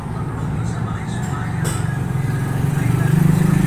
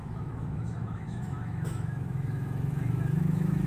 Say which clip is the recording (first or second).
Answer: first